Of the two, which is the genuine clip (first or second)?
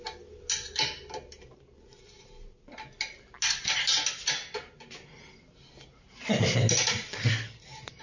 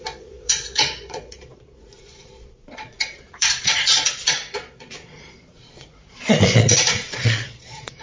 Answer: first